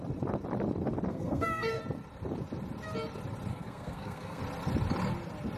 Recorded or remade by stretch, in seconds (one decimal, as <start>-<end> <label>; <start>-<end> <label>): 0.0-1.1 recorded; 1.1-1.8 remade; 1.8-3.5 recorded; 3.5-4.4 remade; 4.4-5.6 recorded